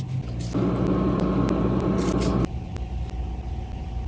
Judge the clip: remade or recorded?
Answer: recorded